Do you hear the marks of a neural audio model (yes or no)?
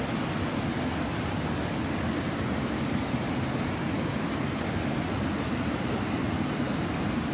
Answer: no